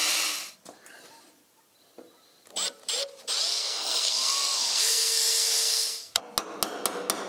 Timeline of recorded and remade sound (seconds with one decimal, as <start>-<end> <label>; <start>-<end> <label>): 0.0-3.5 recorded; 3.5-6.2 remade; 6.2-7.3 recorded